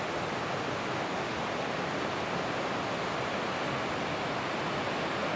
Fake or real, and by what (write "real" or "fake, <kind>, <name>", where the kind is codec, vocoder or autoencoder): real